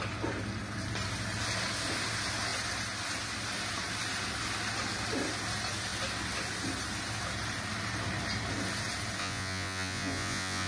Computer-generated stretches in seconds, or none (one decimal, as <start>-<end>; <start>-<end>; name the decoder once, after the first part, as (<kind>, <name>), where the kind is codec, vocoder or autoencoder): 9.2-10.7 (vocoder, Vocos)